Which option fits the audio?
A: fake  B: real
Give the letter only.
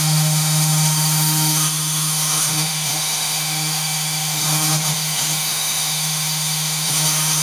A